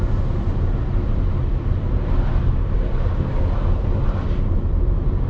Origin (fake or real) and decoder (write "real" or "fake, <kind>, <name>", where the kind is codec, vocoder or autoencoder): real